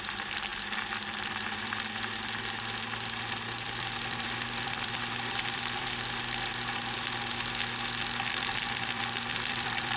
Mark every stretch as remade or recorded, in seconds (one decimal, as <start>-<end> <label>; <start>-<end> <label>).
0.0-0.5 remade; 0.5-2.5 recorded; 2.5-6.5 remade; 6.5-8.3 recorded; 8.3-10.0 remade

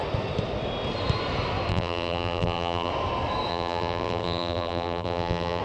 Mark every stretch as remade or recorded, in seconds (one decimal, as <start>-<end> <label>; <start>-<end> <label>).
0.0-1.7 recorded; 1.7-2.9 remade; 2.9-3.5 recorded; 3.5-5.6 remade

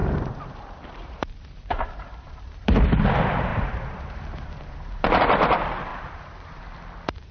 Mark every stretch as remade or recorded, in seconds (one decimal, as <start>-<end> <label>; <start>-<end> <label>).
0.0-3.0 remade; 3.0-3.5 recorded; 3.5-5.2 remade; 5.2-5.9 recorded; 5.9-6.6 remade; 6.6-7.3 recorded

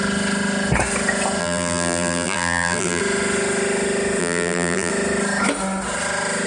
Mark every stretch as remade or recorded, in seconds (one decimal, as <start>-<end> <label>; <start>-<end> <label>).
0.0-1.4 recorded; 1.4-3.0 remade; 3.0-4.2 recorded; 4.2-4.9 remade; 4.9-6.5 recorded